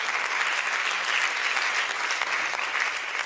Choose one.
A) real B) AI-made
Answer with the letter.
A